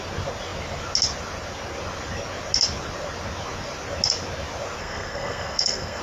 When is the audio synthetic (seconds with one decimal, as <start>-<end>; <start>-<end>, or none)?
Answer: 4.8-6.0